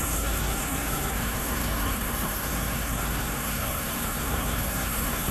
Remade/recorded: remade